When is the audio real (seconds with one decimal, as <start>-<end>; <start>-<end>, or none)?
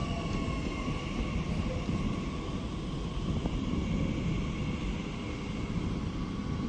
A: 0.0-6.7